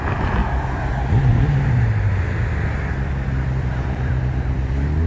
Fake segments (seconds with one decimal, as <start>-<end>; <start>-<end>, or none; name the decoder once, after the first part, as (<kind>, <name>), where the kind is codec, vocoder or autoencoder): none

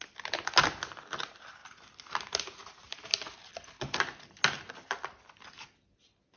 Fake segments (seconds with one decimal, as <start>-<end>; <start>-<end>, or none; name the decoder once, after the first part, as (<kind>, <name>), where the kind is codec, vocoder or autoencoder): none

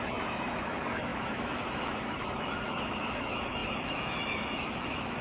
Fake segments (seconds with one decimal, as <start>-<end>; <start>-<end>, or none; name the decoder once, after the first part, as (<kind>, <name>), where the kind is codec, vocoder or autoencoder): 0.0-5.2 (autoencoder, DAC-VAE)

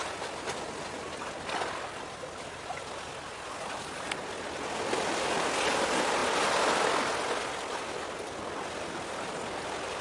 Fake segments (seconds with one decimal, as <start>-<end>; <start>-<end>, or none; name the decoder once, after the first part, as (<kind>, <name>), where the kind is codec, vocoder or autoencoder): none